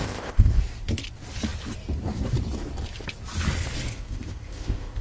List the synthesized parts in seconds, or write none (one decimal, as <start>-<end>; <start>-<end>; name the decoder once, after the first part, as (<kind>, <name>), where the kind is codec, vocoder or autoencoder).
0.0-0.6 (codec, ZipCodec); 3.9-5.0